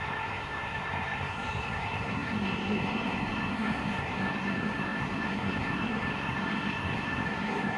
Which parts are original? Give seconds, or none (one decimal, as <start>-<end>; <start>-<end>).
none